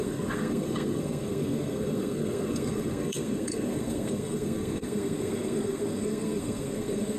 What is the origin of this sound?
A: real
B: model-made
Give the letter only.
B